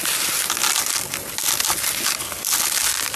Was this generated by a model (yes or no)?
no